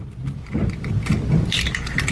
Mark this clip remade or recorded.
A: recorded